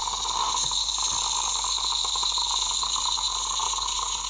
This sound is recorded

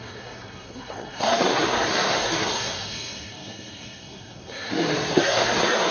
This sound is remade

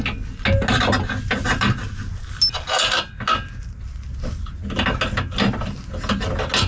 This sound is recorded